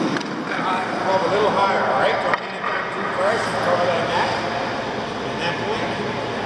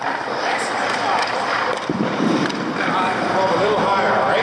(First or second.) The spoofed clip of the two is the second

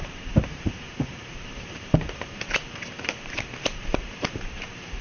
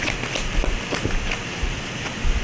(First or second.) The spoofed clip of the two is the first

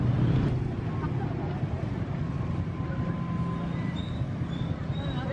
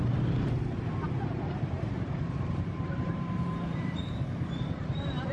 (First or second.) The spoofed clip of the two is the second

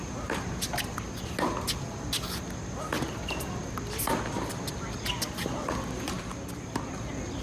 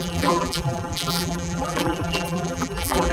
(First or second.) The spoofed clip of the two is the second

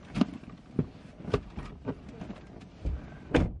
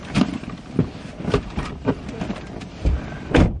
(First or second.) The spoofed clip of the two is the second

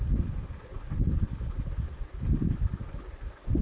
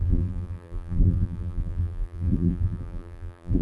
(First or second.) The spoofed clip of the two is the second